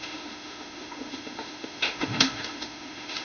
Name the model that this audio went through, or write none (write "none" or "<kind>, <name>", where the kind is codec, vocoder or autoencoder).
autoencoder, DAC-VAE